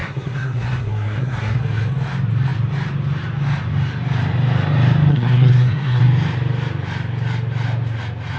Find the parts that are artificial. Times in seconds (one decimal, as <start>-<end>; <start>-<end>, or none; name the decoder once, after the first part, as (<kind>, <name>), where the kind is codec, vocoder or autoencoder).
0.0-1.6 (codec, SNAC); 5.1-6.0